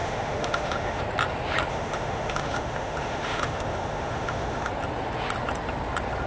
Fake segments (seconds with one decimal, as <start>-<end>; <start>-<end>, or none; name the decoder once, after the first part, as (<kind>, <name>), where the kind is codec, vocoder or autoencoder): 0.0-1.0 (autoencoder, DAC-VAE); 1.7-4.7